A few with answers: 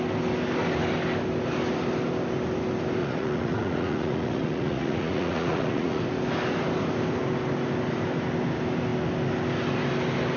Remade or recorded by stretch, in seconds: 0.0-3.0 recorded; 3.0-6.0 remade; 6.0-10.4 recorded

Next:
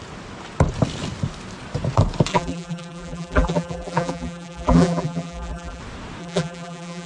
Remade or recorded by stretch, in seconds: 0.0-2.3 recorded; 2.3-5.8 remade; 5.8-6.2 recorded; 6.2-7.1 remade

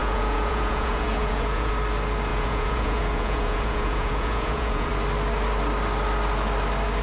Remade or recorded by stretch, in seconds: 0.0-1.7 remade; 1.7-2.3 recorded; 2.3-4.9 remade; 4.9-7.0 recorded

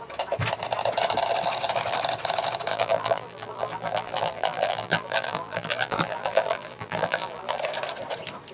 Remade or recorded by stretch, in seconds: 0.0-2.7 recorded; 2.7-7.6 remade; 7.6-8.5 recorded

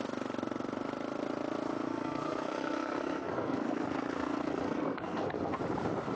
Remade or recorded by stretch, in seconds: 0.0-1.9 recorded; 1.9-5.6 remade; 5.6-6.2 recorded

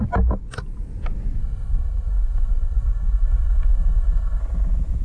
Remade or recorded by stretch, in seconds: 0.0-1.4 recorded; 1.4-4.4 remade; 4.4-5.0 recorded

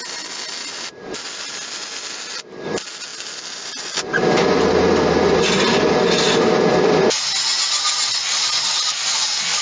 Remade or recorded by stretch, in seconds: 0.0-9.6 recorded